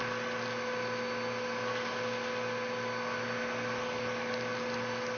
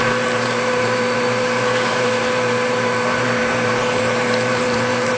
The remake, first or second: second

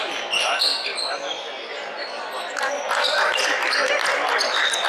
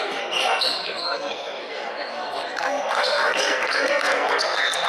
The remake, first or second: second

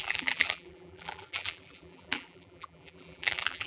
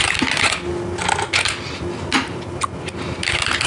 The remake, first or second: first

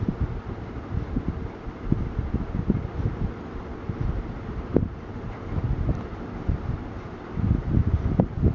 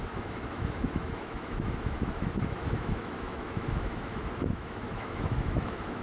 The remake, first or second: second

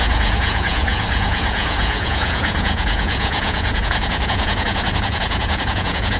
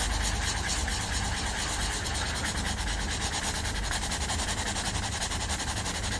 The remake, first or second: first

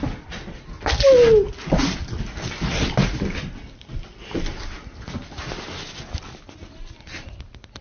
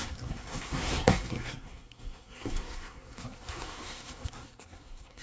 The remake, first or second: second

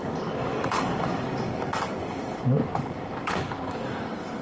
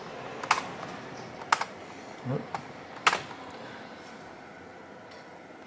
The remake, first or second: first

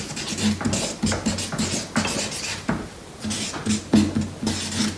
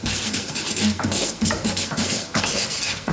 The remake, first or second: second